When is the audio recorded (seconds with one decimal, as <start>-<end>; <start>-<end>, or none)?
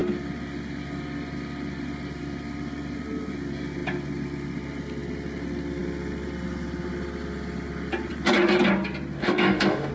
0.0-9.2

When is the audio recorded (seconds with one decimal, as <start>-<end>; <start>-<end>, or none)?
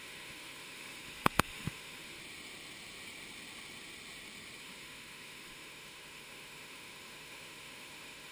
2.2-4.6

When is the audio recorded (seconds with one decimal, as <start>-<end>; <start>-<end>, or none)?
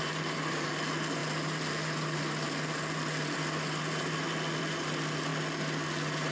0.0-6.3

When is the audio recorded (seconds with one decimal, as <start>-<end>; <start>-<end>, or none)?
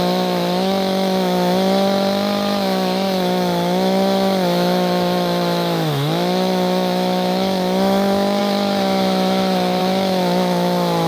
none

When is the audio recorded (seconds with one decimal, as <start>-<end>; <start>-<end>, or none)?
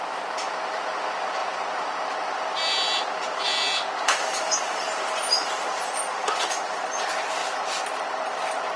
0.0-8.8